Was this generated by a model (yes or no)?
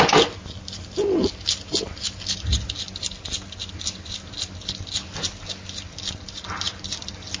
no